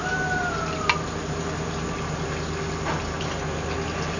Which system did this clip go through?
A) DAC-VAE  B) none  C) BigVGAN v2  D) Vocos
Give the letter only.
B